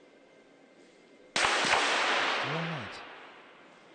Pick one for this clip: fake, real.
real